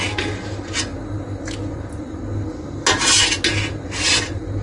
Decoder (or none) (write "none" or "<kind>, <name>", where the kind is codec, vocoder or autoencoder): none